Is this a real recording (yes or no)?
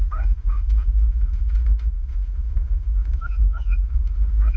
no